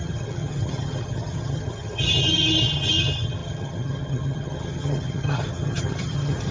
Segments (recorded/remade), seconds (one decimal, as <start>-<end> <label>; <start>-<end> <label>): 0.0-6.5 remade